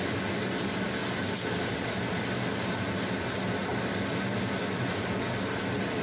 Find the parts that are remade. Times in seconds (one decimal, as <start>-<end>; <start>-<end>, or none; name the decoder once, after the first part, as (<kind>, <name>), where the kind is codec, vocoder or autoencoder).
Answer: none

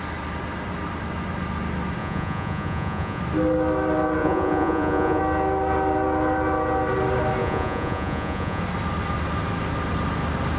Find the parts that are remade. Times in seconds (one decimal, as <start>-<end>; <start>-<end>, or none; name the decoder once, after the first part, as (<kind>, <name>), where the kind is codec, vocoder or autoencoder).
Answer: 2.0-3.2 (vocoder, Vocos); 4.2-5.2; 7.4-8.6

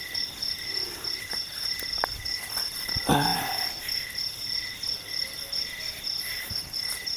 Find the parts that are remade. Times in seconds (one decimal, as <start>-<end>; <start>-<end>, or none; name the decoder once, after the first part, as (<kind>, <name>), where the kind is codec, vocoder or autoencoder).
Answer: none